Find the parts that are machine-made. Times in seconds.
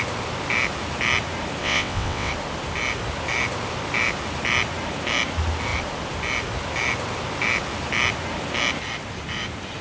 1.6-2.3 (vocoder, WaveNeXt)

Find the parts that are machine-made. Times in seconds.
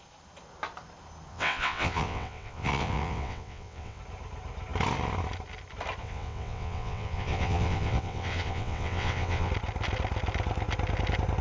1.3-4.0 (vocoder, WaveNeXt); 6.0-9.5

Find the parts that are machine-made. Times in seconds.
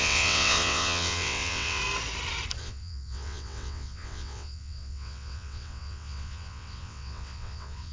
0.0-1.8 (vocoder, WaveNeXt); 2.6-7.9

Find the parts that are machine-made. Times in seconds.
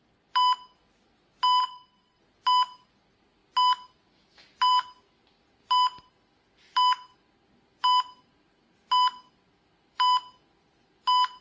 1.6-2.2 (vocoder, WaveNeXt)